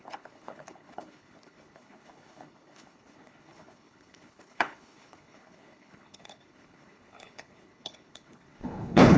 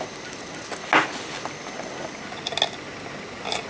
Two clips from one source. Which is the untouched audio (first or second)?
second